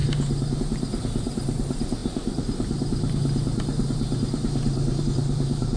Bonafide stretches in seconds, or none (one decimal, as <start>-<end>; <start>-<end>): none